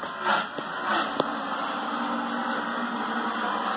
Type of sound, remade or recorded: recorded